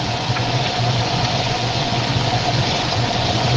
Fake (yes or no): yes